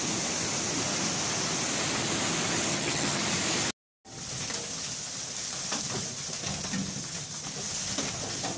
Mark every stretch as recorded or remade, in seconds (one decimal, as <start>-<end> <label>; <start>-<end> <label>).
0.0-2.7 recorded; 2.7-3.2 remade; 3.2-8.6 recorded